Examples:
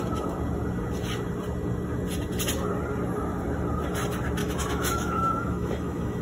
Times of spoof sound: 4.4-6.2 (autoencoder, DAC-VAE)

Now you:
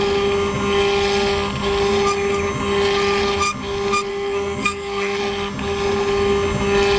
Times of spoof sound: 4.1-5.2 (codec, SNAC)

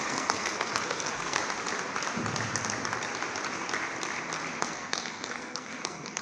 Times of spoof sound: 0.0-1.4 (codec, SNAC); 4.6-6.2